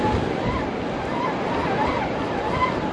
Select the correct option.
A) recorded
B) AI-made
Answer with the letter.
A